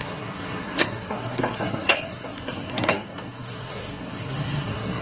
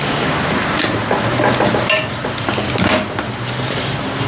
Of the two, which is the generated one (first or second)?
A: first